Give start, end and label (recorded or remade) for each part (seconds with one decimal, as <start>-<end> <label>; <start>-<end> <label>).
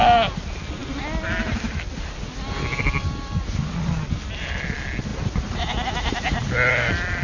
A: 0.0-7.2 recorded